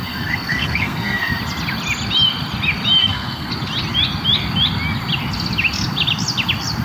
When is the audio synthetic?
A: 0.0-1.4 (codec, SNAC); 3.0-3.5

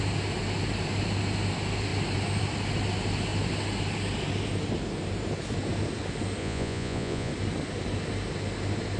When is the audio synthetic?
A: 6.4-7.3 (vocoder, Vocos)